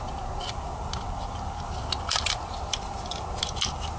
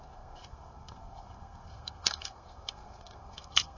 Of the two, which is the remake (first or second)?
second